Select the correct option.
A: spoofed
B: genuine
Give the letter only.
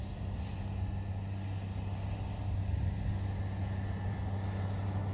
B